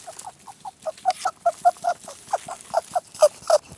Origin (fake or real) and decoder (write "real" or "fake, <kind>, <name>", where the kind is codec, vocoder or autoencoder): real